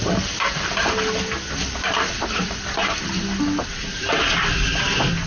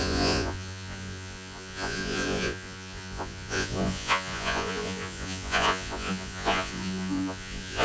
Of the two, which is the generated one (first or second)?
second